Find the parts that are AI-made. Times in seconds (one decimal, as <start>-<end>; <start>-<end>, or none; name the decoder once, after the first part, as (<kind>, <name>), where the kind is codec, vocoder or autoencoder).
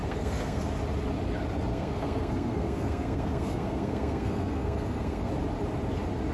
0.0-0.6 (codec, SNAC); 1.7-5.3